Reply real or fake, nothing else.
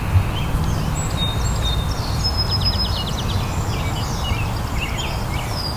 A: real